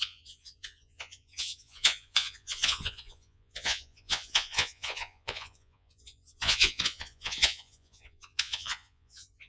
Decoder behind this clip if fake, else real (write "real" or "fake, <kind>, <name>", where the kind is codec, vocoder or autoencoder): fake, vocoder, Vocos